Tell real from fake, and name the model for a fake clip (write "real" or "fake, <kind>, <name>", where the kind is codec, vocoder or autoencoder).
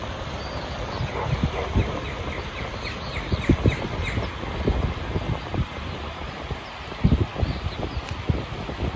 real